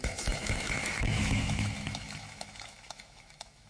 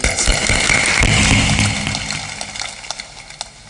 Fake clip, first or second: first